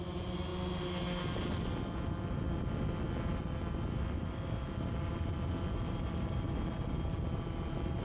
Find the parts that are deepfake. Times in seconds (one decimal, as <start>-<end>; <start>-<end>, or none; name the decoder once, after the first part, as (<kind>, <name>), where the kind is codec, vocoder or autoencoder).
none